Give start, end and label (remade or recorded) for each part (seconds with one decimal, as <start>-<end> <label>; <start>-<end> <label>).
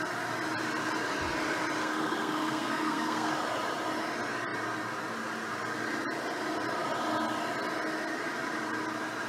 0.0-1.8 recorded; 1.8-3.3 remade; 3.3-9.3 recorded